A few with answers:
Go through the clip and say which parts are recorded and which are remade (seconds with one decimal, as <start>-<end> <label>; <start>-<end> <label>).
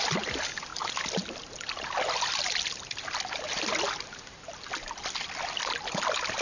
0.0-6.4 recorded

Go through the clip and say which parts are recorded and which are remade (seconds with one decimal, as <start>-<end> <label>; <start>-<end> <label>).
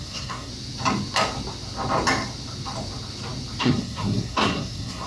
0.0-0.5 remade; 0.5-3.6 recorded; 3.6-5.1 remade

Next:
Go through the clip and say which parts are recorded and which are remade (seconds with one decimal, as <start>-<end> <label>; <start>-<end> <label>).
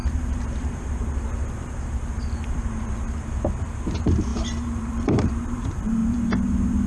0.0-6.9 remade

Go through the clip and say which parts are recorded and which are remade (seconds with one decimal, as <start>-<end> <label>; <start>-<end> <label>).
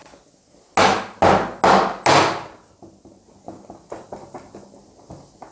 0.0-5.5 recorded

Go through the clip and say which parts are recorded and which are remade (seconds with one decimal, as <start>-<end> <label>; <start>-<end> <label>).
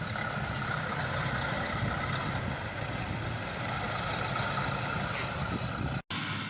0.0-6.5 recorded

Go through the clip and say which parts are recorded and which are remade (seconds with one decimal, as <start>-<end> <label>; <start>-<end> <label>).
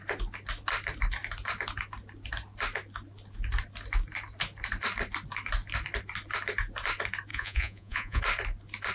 0.0-7.3 recorded; 7.3-8.2 remade; 8.2-8.9 recorded